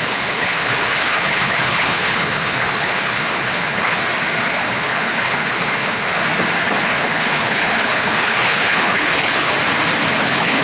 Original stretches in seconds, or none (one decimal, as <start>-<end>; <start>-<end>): 4.0-4.5; 6.2-6.8; 9.5-10.2